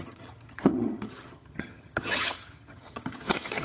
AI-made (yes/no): yes